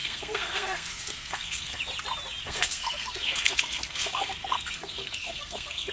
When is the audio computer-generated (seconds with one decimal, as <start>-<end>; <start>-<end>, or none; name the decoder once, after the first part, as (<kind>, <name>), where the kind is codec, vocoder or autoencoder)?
0.0-1.8 (codec, SNAC); 2.4-5.9